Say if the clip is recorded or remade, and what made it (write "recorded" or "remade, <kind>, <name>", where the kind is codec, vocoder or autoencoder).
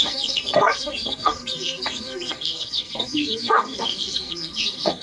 remade, codec, SNAC